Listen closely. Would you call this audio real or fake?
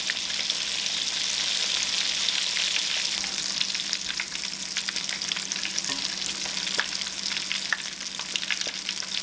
real